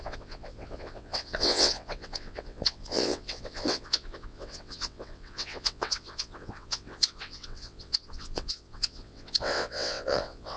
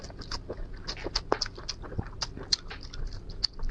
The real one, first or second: second